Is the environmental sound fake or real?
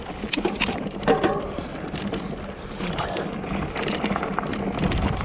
real